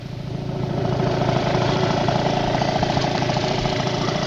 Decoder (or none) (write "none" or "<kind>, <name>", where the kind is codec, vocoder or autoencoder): vocoder, BigVGAN v2